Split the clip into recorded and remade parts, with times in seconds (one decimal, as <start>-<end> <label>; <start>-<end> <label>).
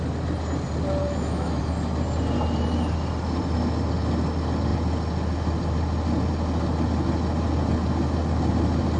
0.0-1.0 recorded; 1.0-1.6 remade; 1.6-9.0 recorded